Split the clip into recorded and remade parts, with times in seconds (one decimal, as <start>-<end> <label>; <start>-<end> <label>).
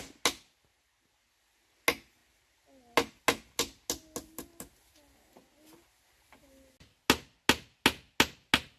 0.0-8.8 recorded